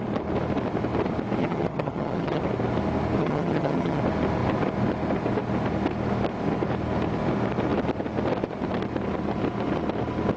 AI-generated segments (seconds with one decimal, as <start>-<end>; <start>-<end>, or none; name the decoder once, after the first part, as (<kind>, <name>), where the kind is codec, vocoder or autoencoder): 1.4-2.4 (vocoder, HiFi-GAN); 3.2-4.0